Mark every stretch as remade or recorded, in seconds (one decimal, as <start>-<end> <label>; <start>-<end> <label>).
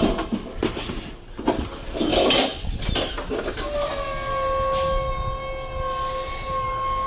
0.0-7.1 recorded